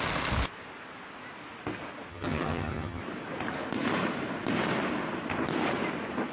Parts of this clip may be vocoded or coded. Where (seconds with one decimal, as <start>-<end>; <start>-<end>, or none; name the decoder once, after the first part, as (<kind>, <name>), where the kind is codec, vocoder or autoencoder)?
2.1-3.0 (vocoder, HiFi-GAN)